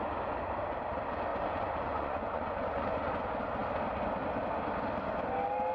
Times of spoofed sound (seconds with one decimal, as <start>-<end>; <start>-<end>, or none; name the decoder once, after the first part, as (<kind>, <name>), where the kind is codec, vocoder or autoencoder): 1.3-3.1 (vocoder, Vocos)

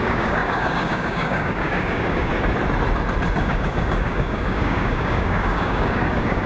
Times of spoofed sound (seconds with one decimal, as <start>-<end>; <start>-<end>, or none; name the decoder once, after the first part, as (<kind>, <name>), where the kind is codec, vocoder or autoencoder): 0.0-2.3 (codec, DAC); 3.4-6.5

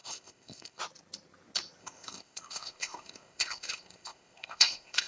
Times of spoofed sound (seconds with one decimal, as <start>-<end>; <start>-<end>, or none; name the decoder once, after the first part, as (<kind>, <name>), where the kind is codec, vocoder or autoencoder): 0.0-0.8 (codec, ZipCodec); 1.8-5.1

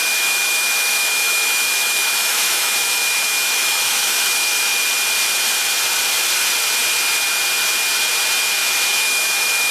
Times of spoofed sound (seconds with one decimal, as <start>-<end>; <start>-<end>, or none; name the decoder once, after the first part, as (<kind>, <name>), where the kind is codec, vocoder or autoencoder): 0.0-4.8 (autoencoder, DAC-VAE); 8.6-9.7

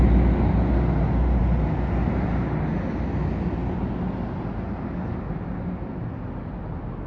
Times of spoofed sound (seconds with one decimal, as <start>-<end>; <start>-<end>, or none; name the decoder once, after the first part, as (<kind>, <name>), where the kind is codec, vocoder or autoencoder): none

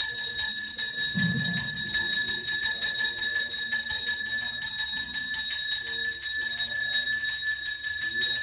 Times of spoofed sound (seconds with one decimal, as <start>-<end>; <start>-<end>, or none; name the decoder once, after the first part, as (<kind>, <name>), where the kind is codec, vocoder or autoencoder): 0.0-4.2 (vocoder, WaveNeXt)

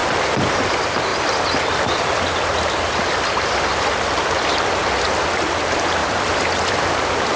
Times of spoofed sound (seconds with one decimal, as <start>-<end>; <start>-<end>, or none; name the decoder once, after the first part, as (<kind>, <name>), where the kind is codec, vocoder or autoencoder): 1.1-3.9 (vocoder, BigVGAN v2); 6.0-7.4